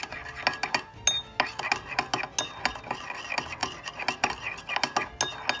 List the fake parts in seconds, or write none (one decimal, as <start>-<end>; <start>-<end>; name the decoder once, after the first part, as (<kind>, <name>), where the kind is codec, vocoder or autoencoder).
none